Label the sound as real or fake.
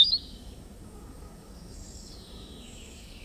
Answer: fake